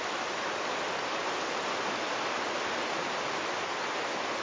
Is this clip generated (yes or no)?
no